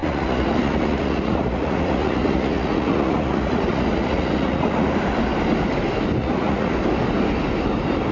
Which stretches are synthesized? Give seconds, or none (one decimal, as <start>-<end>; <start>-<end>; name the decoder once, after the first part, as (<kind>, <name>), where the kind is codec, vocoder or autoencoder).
0.0-4.9 (vocoder, Vocos); 6.2-6.7